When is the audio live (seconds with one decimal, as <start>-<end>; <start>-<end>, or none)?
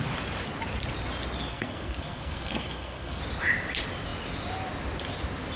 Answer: 0.0-1.5; 3.2-5.6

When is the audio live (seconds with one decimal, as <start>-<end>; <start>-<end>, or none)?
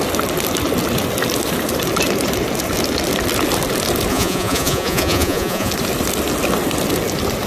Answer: 0.0-4.1; 5.7-7.5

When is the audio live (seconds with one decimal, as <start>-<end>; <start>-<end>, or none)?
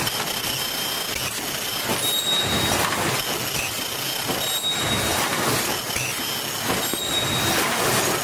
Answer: 0.0-8.2